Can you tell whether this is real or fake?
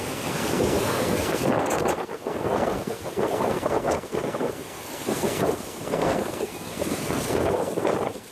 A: fake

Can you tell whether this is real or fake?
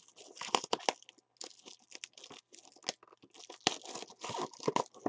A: real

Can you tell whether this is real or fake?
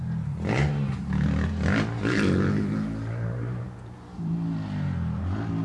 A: real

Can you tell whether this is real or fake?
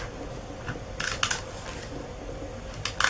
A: real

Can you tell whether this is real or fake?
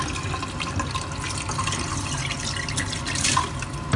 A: real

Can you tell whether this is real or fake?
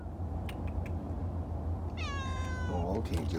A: real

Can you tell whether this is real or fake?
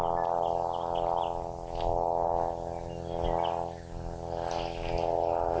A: real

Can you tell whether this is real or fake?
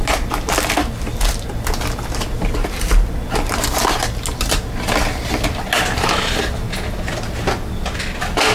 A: real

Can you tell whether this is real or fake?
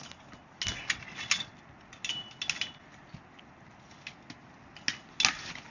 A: real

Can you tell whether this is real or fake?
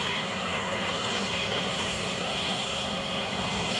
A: fake